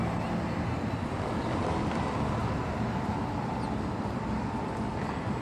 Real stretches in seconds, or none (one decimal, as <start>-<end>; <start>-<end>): 0.0-2.4; 4.7-5.4